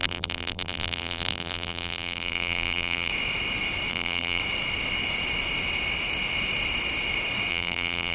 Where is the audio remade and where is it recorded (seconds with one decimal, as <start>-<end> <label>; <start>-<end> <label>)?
0.0-3.1 remade; 3.1-3.9 recorded; 3.9-4.4 remade; 4.4-7.5 recorded; 7.5-8.1 remade